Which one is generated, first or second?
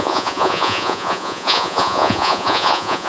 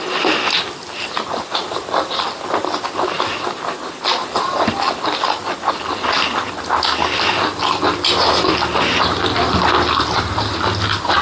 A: first